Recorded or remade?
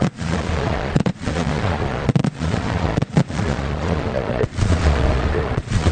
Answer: remade